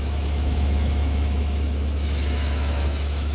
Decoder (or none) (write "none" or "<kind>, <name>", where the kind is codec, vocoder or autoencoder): autoencoder, DAC-VAE